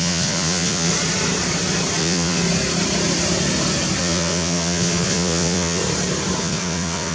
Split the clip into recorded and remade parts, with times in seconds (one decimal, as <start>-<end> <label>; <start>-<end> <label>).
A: 0.0-0.9 remade; 0.9-2.0 recorded; 2.0-2.4 remade; 2.4-4.0 recorded; 4.0-5.8 remade; 5.8-6.4 recorded; 6.4-7.1 remade